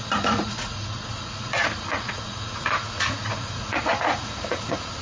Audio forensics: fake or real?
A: fake